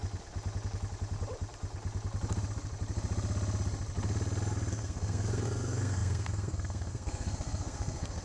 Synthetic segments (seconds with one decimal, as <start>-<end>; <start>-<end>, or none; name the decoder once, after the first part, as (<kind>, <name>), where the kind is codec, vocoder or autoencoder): 4.7-8.2 (codec, SNAC)